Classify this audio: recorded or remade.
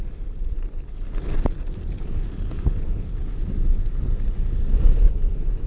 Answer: recorded